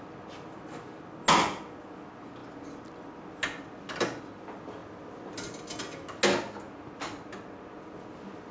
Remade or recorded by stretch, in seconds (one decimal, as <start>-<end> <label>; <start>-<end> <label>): 0.0-8.5 recorded